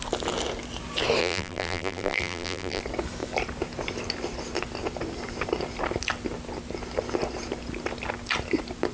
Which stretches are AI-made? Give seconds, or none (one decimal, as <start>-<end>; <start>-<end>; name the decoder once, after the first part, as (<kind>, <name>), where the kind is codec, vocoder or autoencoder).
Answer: 1.2-2.8 (vocoder, BigVGAN v2)